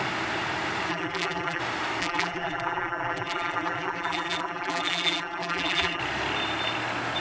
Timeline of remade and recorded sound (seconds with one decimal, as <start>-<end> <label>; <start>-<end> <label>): 0.0-0.9 recorded; 0.9-1.6 remade; 1.6-2.0 recorded; 2.0-6.0 remade; 6.0-7.2 recorded